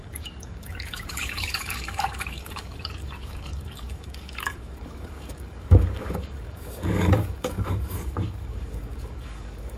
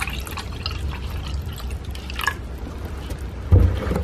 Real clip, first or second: second